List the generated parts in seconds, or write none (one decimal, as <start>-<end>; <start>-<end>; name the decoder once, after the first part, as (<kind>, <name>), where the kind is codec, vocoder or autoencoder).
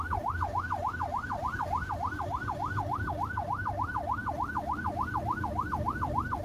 none